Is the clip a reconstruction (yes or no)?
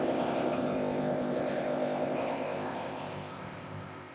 yes